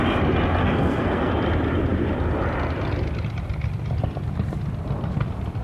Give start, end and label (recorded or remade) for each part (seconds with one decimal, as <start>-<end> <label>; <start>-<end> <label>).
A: 0.0-0.6 recorded; 0.6-1.3 remade; 1.3-5.6 recorded

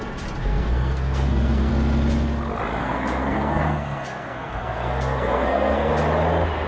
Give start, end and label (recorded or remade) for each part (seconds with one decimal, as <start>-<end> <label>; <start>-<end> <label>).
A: 0.0-0.4 recorded; 0.4-1.7 remade; 1.7-2.8 recorded; 2.8-5.9 remade; 5.9-6.7 recorded

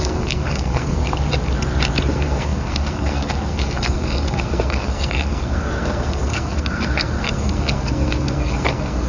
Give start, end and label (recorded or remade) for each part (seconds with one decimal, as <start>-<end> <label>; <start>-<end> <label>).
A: 0.0-1.0 remade; 1.0-2.1 recorded; 2.1-9.1 remade

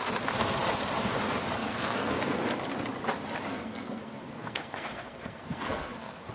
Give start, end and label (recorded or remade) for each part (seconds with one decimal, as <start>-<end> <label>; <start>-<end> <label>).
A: 0.0-1.6 recorded; 1.6-2.4 remade; 2.4-3.5 recorded; 3.5-6.3 remade